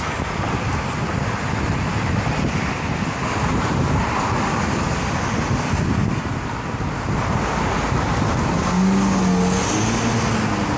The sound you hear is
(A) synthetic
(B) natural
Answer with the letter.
B